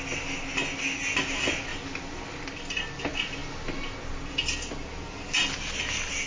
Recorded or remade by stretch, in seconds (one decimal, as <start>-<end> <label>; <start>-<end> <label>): 0.0-6.3 recorded